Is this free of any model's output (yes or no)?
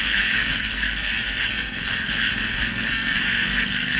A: no